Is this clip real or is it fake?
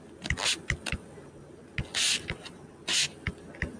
real